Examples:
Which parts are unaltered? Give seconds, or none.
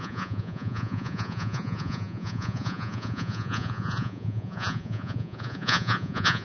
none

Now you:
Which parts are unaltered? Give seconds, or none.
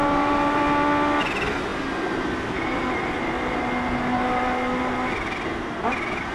0.6-6.3